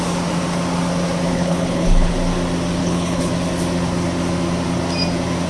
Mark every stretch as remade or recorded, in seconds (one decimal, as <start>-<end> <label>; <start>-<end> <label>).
0.0-1.3 recorded; 1.3-2.1 remade; 2.1-2.8 recorded; 2.8-3.3 remade; 3.3-5.5 recorded